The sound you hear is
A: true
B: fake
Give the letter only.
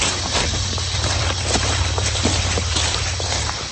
A